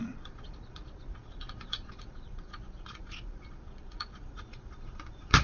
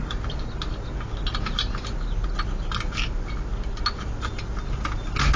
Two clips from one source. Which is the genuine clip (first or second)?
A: second